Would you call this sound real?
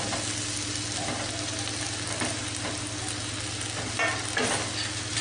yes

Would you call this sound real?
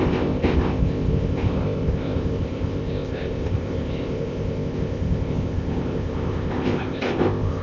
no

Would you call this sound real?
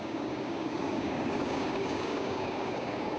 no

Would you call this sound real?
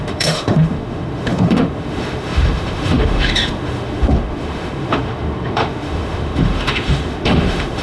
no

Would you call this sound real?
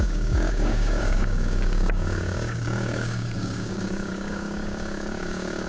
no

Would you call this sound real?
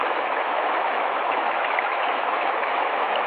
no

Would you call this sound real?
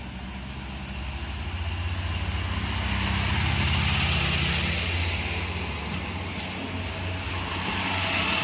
yes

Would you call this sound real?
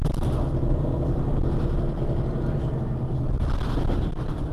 no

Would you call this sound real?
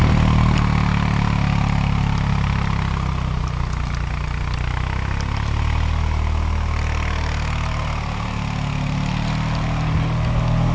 yes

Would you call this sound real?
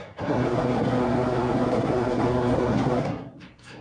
no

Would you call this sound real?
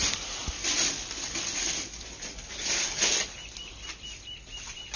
no